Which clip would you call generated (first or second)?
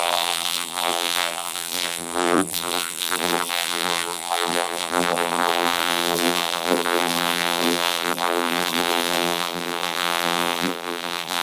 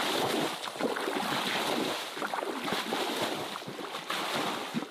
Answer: first